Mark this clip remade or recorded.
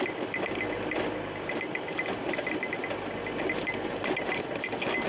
recorded